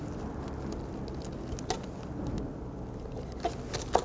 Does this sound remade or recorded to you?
recorded